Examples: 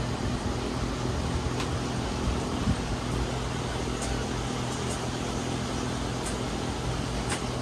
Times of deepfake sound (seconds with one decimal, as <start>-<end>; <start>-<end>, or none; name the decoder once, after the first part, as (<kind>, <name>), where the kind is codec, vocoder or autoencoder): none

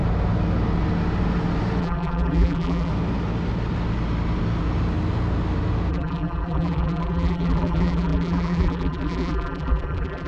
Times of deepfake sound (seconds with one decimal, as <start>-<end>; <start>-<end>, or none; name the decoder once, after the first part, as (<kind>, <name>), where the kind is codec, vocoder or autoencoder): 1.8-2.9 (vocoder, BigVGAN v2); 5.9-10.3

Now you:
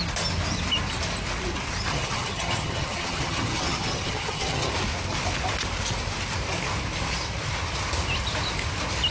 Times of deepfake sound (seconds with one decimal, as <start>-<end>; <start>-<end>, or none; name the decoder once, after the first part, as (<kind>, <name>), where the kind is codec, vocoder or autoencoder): 1.9-4.7 (vocoder, HiFi-GAN)

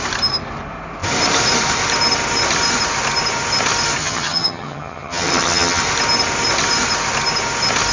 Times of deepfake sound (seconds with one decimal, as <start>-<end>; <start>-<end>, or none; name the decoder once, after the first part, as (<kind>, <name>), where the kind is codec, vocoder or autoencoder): 4.0-5.8 (vocoder, HiFi-GAN)

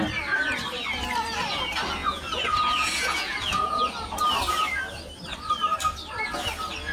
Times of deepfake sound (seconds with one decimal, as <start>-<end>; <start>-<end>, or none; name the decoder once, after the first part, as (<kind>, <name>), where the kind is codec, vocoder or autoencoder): 2.0-3.8 (vocoder, Vocos)

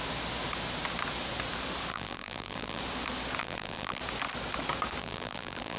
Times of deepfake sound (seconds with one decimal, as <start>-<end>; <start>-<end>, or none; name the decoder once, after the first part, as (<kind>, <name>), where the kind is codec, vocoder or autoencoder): 1.9-2.8 (vocoder, BigVGAN v2); 3.4-4.0; 5.0-5.8

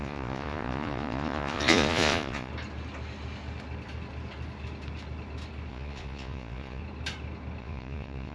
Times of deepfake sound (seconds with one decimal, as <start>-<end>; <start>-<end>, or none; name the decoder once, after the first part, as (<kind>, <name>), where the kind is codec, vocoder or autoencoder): 0.0-2.5 (vocoder, Vocos); 5.7-6.8; 7.6-8.3

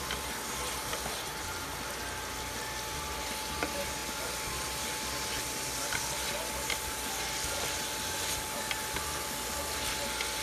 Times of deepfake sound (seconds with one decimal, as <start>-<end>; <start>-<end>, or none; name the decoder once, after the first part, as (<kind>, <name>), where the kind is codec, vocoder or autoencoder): none